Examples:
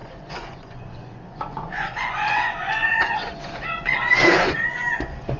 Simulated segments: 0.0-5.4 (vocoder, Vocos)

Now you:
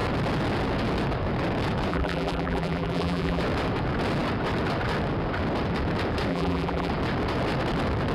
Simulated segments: 1.9-3.4 (vocoder, BigVGAN v2); 6.3-6.9

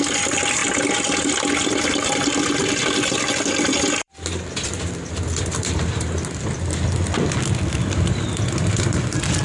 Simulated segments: 0.0-0.6 (vocoder, BigVGAN v2); 1.8-9.4

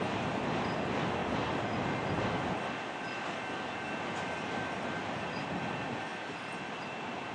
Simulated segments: 0.0-1.2 (vocoder, BigVGAN v2); 5.2-6.1; 6.8-7.3